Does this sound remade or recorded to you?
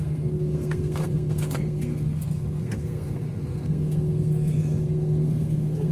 remade